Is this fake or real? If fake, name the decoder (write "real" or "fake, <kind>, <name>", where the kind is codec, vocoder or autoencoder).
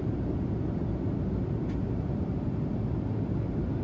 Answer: real